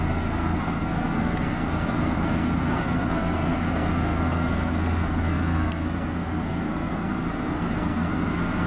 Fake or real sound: fake